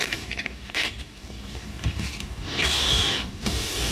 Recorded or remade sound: remade